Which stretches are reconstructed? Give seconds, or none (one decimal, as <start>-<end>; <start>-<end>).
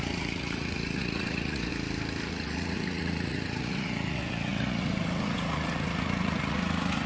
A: 0.0-1.7; 2.3-7.1